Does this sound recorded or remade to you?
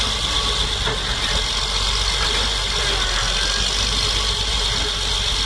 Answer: recorded